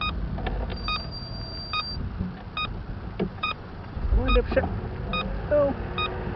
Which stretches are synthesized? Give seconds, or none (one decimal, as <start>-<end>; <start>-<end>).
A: 3.3-4.3

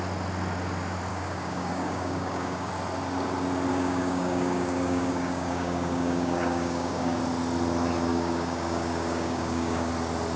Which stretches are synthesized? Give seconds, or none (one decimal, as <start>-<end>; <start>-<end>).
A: 1.1-2.7; 3.7-7.2; 8.1-9.9

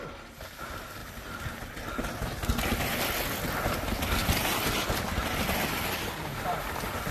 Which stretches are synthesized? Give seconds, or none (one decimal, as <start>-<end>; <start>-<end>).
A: none

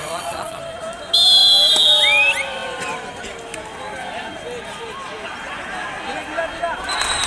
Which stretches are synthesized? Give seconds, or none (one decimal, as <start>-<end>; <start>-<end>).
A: 0.0-0.6

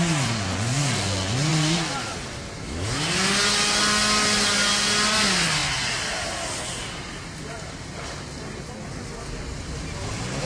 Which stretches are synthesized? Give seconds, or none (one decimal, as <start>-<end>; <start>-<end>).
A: none

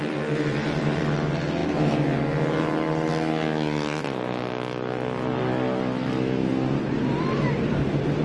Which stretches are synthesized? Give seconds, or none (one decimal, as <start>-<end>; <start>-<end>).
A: 0.0-1.6; 2.6-3.1; 7.1-8.2